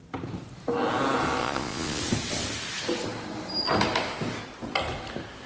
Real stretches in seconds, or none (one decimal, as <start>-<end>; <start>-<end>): 0.0-1.4; 2.0-5.5